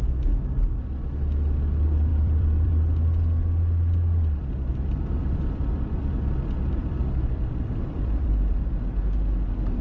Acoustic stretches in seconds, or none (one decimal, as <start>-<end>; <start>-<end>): 0.0-2.1; 2.7-4.7; 8.6-9.8